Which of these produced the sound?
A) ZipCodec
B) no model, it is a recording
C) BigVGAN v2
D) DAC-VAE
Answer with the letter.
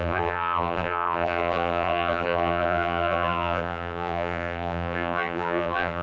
C